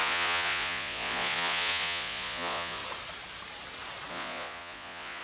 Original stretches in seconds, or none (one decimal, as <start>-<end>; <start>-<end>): 2.8-4.1